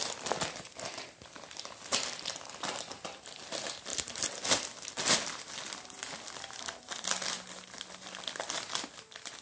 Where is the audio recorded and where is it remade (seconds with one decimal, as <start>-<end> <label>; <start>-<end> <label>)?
0.0-9.4 recorded